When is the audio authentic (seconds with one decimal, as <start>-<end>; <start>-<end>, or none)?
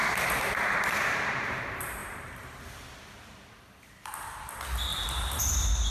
1.6-2.0; 2.6-4.9; 5.4-5.9